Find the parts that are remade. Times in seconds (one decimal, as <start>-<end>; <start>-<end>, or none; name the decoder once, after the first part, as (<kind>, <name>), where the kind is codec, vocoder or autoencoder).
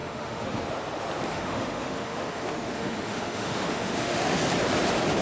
0.0-0.7 (autoencoder, DAC-VAE); 1.3-4.4